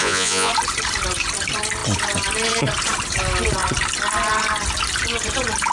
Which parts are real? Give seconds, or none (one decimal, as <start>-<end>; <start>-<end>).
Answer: 0.5-5.7